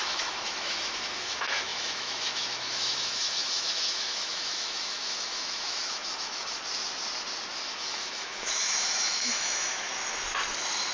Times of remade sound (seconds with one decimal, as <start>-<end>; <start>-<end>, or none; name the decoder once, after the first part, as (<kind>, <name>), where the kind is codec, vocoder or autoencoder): 0.0-6.6 (autoencoder, DAC-VAE); 7.6-9.9